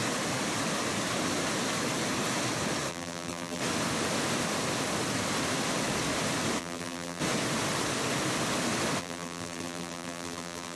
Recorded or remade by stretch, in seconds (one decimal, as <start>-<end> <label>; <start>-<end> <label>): 0.0-2.9 recorded; 2.9-3.6 remade; 3.6-6.6 recorded; 6.6-7.2 remade; 7.2-9.0 recorded; 9.0-10.8 remade

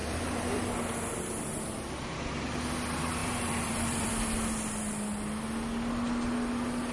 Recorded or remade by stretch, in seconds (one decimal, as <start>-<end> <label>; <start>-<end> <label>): 0.0-0.6 remade; 0.6-3.2 recorded; 3.2-4.1 remade; 4.1-6.9 recorded

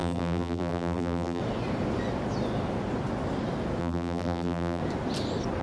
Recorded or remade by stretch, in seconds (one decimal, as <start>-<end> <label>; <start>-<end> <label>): 0.0-1.4 remade; 1.4-3.8 recorded; 3.8-4.8 remade; 4.8-5.6 recorded